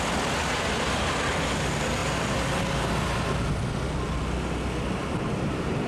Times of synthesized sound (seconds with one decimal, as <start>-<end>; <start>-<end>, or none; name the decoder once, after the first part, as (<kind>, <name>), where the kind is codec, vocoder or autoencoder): 0.0-2.0 (vocoder, BigVGAN v2); 5.5-5.9